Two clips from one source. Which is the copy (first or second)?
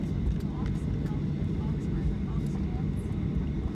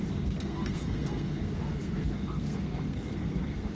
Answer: second